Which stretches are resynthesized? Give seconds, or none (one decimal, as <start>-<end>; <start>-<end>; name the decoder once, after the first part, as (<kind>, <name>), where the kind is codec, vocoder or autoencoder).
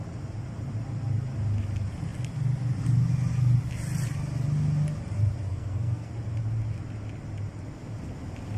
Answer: 5.5-6.1 (codec, SNAC)